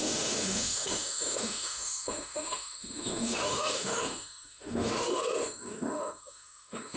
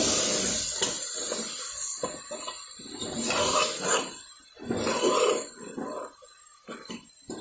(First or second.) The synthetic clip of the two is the first